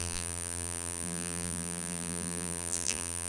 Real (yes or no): no